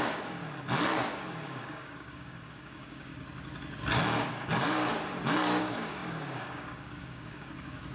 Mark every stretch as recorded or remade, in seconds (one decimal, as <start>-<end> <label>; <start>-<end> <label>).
0.0-0.4 remade; 0.4-1.1 recorded; 1.1-3.1 remade; 3.1-4.3 recorded; 4.3-4.9 remade; 4.9-5.6 recorded; 5.6-7.9 remade